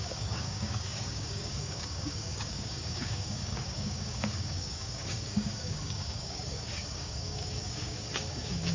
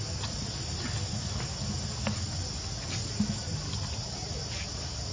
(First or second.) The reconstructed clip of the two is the first